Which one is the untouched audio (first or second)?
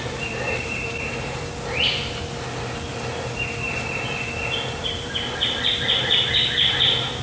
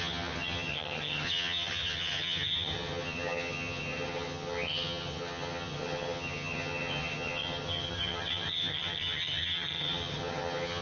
first